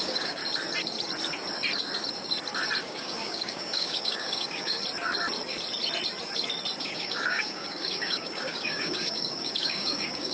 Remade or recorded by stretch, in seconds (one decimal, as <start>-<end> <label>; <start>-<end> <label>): 0.0-0.4 remade; 0.4-2.8 recorded; 2.8-4.8 remade; 4.8-6.8 recorded; 6.8-10.3 remade